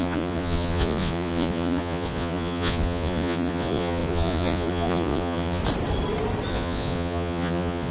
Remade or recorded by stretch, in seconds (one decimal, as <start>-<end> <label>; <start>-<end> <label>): 0.0-5.6 remade; 5.6-6.5 recorded; 6.5-7.9 remade